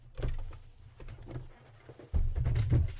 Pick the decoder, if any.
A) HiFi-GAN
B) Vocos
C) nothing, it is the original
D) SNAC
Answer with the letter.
C